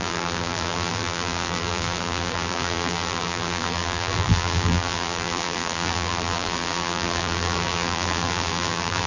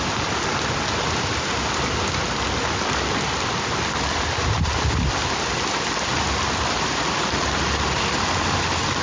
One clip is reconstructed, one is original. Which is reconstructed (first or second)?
first